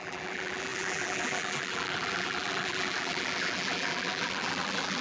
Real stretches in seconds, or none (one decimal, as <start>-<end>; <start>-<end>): none